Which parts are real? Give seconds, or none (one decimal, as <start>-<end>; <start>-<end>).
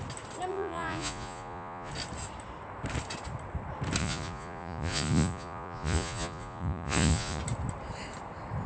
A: 0.0-0.5; 1.9-4.0; 7.4-8.7